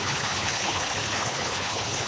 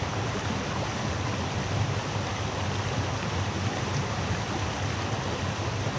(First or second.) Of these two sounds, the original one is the second